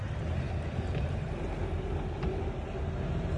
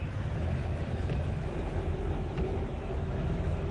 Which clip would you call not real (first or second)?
second